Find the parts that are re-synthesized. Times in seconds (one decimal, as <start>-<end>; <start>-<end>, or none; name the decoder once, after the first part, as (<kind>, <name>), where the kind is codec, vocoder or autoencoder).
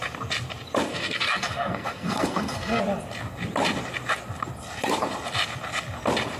0.9-2.8 (codec, SNAC)